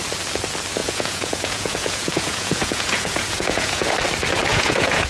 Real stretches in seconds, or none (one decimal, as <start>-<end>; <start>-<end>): 0.0-0.8; 3.9-4.5